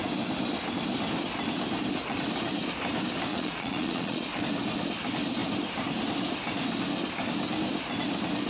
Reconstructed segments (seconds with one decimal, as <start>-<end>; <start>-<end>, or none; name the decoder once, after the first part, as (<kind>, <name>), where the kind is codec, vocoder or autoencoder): 3.3-4.4 (vocoder, Vocos)